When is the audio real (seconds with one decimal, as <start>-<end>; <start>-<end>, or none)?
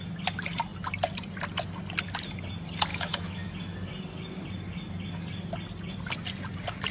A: 0.0-2.9; 3.5-6.9